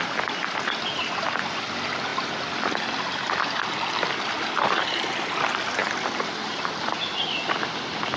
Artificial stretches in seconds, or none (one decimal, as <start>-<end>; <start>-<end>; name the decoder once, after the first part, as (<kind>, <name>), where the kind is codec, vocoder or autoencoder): none